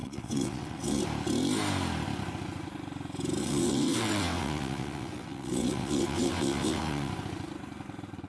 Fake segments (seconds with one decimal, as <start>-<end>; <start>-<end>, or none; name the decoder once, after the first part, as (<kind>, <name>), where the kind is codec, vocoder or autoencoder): 0.0-1.0 (vocoder, WaveNeXt); 3.4-7.1